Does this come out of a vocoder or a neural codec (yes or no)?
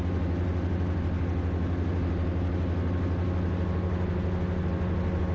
no